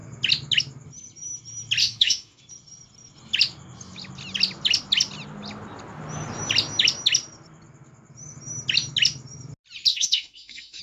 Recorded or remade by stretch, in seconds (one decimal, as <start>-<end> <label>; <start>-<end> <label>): 0.0-1.8 recorded; 1.8-2.4 remade; 2.4-9.9 recorded; 9.9-10.8 remade